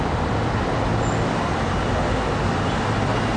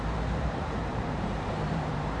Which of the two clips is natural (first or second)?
first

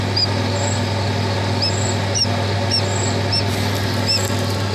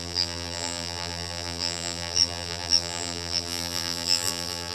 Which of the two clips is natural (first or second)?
first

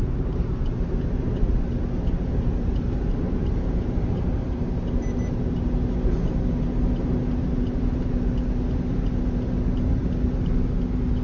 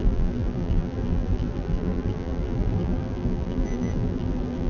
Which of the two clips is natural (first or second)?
first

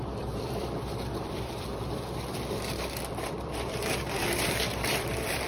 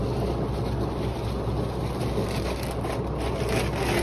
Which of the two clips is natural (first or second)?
second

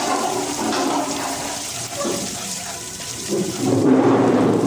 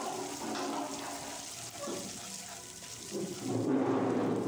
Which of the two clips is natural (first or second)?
second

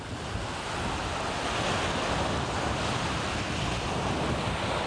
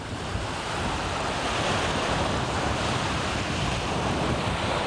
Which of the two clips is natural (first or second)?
first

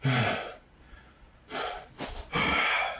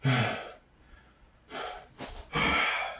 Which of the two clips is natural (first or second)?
second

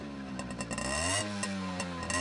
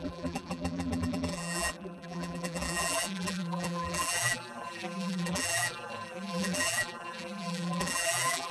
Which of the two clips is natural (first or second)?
first